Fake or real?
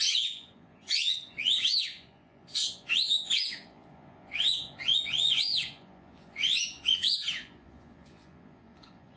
fake